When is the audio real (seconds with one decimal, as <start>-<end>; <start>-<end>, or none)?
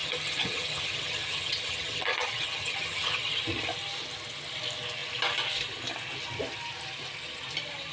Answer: 3.4-7.9